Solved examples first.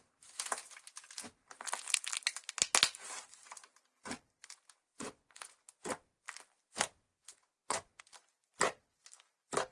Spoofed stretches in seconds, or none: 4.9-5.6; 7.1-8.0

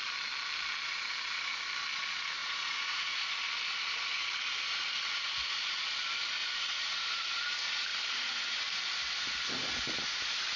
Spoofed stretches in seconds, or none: 2.4-3.3; 6.4-7.4

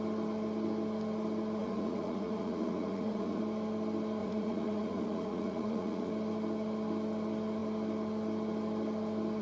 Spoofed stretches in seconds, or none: 1.6-3.4; 4.2-6.1

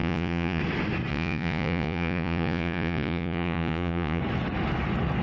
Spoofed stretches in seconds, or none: 0.0-0.6; 1.1-4.2

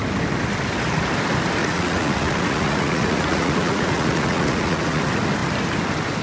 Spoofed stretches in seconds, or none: 1.6-5.0

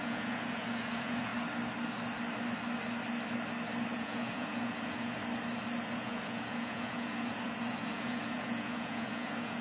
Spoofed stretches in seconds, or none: 0.0-1.3; 3.9-5.2; 5.9-9.6